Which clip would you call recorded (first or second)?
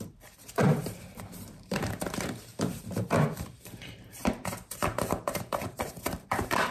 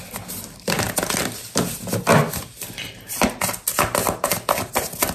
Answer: second